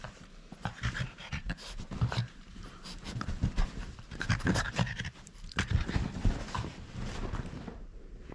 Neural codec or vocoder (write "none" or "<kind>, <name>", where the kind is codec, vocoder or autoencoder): vocoder, BigVGAN v2